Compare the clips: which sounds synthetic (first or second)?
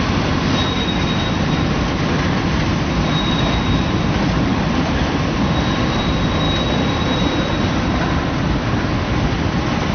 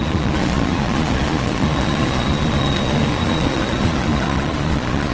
second